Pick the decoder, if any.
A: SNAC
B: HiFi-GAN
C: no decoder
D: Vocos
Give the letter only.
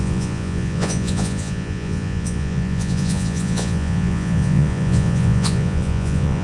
D